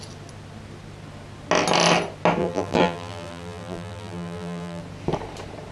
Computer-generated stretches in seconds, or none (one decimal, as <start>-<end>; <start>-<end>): 2.4-4.8